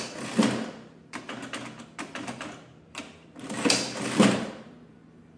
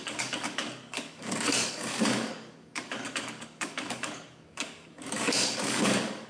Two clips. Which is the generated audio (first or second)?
second